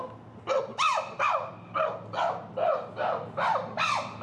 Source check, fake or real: real